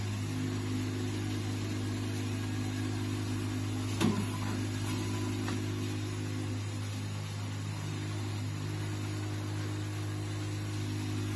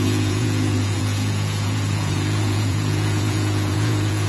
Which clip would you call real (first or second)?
first